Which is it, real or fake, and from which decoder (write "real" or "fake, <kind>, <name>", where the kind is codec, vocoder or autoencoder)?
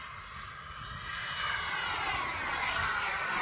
real